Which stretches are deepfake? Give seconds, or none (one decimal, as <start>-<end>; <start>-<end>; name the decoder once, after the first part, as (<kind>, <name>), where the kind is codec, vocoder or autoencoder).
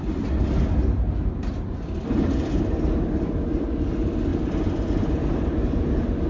none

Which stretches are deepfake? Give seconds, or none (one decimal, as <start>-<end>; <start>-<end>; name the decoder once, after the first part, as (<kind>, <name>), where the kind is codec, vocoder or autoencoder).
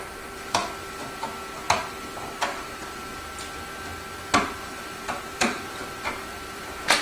0.0-0.6 (vocoder, BigVGAN v2); 2.2-2.8; 4.4-7.0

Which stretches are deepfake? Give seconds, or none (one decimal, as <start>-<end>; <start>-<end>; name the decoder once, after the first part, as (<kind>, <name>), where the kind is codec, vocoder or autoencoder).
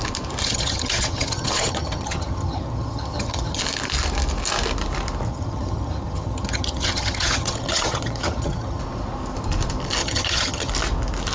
0.4-3.6 (vocoder, HiFi-GAN); 5.3-8.8; 10.0-10.7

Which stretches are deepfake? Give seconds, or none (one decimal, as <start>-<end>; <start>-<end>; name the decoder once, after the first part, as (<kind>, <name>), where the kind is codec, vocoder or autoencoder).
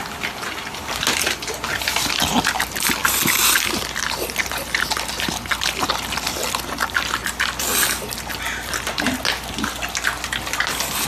none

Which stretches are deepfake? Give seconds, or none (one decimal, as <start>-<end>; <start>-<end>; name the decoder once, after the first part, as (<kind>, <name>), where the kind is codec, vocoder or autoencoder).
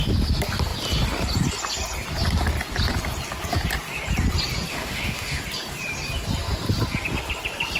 4.7-5.4 (autoencoder, DAC-VAE)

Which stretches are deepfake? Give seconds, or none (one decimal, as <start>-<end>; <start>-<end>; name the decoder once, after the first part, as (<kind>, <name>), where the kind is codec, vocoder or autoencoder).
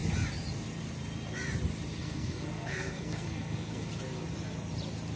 2.0-3.9 (codec, SNAC)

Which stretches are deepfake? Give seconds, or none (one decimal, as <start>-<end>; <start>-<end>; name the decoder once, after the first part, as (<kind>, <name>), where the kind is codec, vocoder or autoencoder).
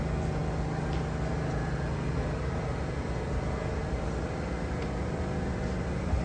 none